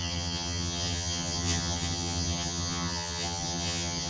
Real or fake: fake